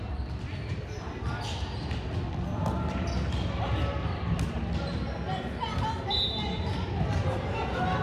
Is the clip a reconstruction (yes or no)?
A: no